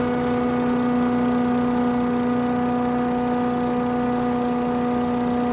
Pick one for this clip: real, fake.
real